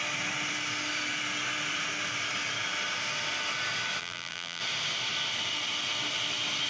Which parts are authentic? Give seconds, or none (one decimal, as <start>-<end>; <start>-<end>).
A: 0.0-4.0; 4.6-6.7